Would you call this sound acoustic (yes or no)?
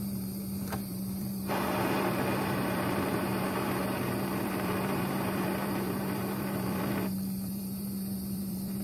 no